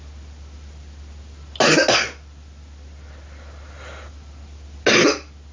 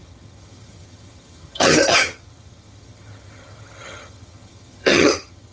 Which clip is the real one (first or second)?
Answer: first